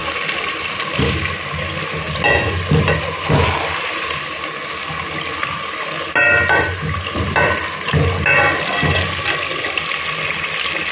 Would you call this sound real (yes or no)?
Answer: yes